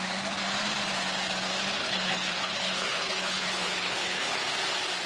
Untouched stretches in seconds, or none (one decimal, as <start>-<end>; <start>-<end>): 0.0-1.8; 4.4-5.1